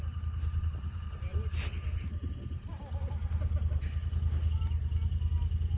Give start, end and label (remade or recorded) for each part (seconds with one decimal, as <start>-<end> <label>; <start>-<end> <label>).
0.0-5.8 recorded